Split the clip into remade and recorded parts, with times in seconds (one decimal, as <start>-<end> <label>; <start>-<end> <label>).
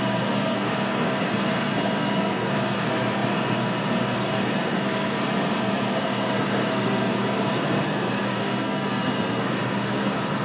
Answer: 0.0-10.4 remade